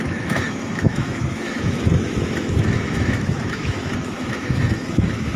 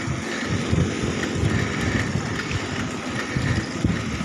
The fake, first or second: first